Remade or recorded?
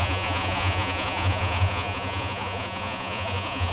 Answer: remade